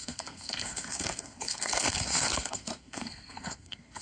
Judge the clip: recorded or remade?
remade